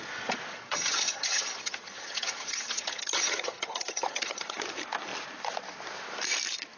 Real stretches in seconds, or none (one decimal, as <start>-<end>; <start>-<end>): 0.0-0.5; 4.6-6.8